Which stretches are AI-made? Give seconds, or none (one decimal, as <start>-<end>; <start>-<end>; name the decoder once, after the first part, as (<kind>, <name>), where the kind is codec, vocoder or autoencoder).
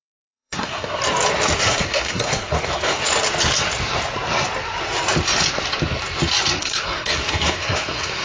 0.0-1.0 (codec, SNAC); 1.6-3.0; 6.6-8.2